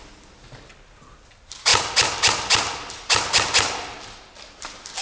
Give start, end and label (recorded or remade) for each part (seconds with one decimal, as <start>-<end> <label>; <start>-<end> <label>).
0.0-5.0 remade

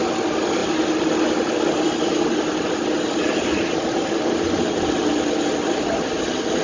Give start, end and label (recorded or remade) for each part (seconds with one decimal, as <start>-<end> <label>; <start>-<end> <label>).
0.0-6.6 recorded

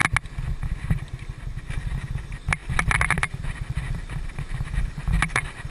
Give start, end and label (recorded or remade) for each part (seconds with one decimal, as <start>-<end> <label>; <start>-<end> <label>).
0.0-1.7 recorded; 1.7-5.7 remade

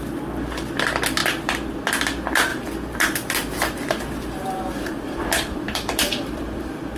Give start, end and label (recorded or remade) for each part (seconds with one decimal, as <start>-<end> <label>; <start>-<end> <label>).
0.0-2.5 recorded; 2.5-6.6 remade; 6.6-7.0 recorded